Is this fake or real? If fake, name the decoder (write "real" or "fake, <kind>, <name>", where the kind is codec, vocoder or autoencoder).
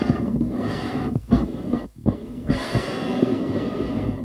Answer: fake, codec, SNAC